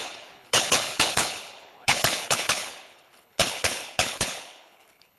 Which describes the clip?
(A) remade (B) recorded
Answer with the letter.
A